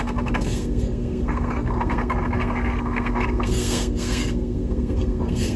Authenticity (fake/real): fake